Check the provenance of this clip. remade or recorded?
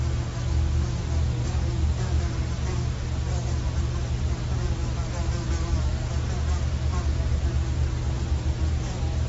recorded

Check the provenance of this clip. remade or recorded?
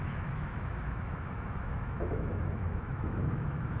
remade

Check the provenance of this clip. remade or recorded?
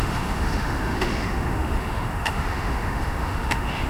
remade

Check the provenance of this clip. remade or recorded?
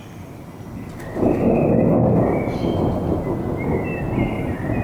recorded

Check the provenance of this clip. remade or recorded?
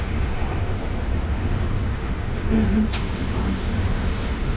remade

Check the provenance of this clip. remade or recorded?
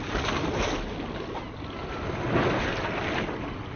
recorded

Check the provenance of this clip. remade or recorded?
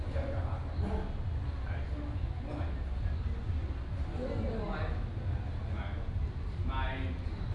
recorded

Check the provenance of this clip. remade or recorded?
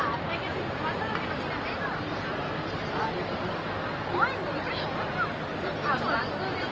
recorded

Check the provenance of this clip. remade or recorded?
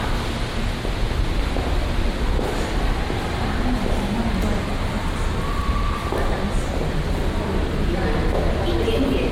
recorded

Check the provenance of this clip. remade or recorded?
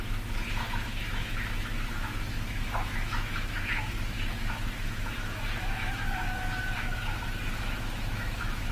remade